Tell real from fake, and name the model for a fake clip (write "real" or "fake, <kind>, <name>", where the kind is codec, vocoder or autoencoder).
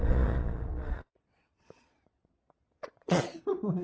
fake, vocoder, Vocos